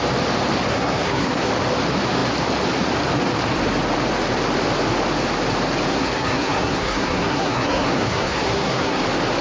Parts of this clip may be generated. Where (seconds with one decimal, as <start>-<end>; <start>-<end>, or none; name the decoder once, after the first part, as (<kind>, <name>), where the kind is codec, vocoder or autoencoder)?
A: 0.7-1.5 (codec, SNAC); 5.9-9.0